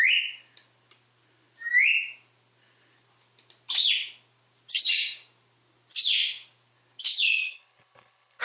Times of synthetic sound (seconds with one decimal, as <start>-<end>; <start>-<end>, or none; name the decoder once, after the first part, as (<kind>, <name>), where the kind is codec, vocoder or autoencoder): 7.1-8.4 (codec, HILCodec)